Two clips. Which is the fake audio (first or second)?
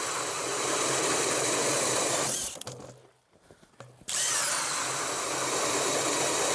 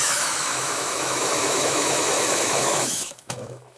second